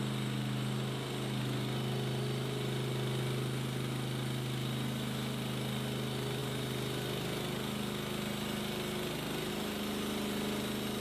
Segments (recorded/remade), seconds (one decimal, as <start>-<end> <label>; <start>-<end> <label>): 0.0-11.0 recorded